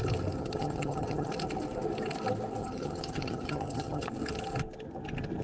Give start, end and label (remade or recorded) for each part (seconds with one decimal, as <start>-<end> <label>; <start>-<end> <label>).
0.0-0.4 recorded; 0.4-1.3 remade; 1.3-2.6 recorded; 2.6-4.1 remade; 4.1-5.4 recorded